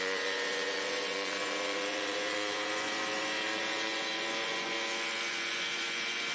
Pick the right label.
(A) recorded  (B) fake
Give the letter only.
B